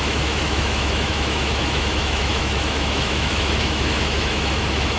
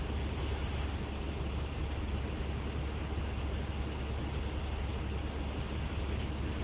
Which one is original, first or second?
second